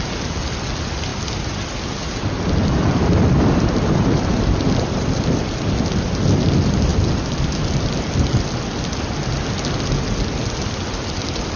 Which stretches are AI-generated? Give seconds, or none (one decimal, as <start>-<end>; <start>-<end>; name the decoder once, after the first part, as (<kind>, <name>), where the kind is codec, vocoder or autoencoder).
2.8-5.5 (vocoder, BigVGAN v2)